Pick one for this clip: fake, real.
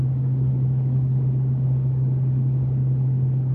fake